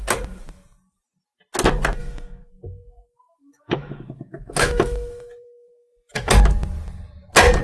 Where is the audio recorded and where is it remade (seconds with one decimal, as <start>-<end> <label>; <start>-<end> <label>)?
0.0-2.0 recorded; 2.0-6.3 remade; 6.3-7.6 recorded